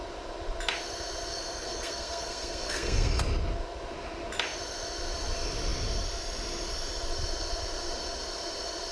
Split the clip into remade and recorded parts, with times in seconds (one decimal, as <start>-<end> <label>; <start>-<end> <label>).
0.0-1.3 recorded; 1.3-3.2 remade; 3.2-8.9 recorded